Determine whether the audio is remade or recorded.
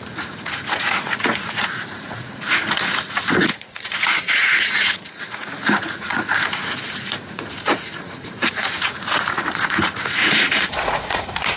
remade